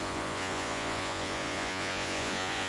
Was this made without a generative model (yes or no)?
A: no